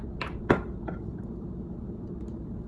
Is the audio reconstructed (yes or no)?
no